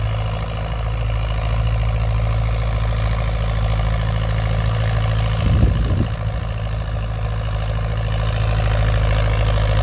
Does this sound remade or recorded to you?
recorded